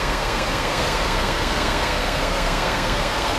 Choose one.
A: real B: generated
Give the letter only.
B